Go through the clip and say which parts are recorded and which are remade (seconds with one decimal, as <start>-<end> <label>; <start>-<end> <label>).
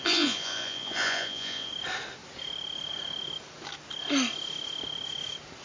0.0-1.7 remade; 1.7-5.6 recorded